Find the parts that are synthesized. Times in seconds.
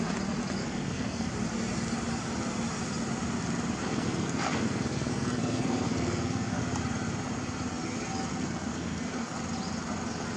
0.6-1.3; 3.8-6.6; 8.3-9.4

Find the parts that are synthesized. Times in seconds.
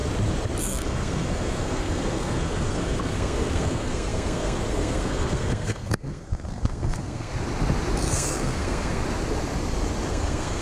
0.6-7.3; 8.0-9.0; 10.1-10.6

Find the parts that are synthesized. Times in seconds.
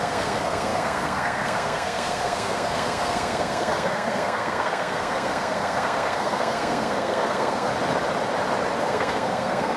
0.0-7.7; 8.8-9.8